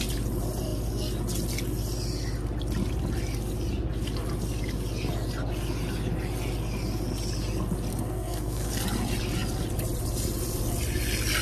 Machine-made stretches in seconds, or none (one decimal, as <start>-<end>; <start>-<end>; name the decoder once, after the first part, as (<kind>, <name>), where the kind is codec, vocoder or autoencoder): 7.9-8.7 (codec, SNAC)